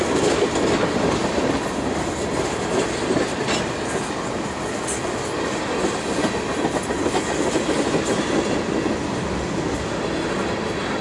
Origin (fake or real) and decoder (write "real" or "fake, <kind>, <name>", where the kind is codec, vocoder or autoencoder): real